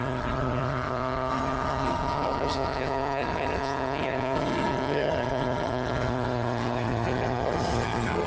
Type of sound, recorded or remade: remade